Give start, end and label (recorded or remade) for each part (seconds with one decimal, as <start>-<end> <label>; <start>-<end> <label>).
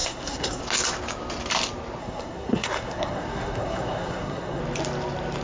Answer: 0.0-0.6 remade; 0.6-2.0 recorded; 2.0-4.6 remade; 4.6-5.4 recorded